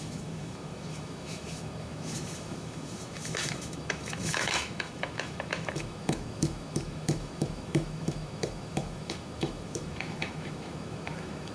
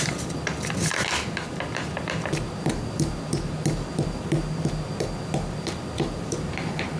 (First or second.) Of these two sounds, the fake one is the first